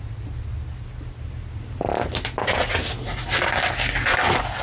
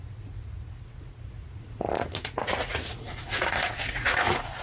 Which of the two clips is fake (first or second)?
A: second